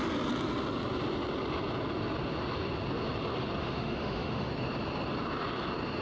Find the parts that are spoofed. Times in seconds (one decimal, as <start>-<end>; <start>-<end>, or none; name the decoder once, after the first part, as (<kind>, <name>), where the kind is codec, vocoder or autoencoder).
3.6-4.5 (autoencoder, DAC-VAE)